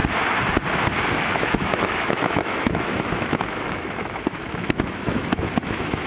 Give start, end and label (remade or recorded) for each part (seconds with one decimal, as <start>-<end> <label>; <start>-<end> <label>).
0.0-1.2 recorded; 1.2-6.1 remade